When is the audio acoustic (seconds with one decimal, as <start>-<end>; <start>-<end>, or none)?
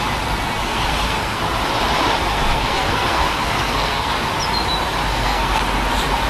0.0-0.6; 1.4-2.3; 4.1-5.1; 5.6-6.3